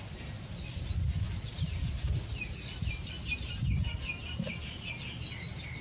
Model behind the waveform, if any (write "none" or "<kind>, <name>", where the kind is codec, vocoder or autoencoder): none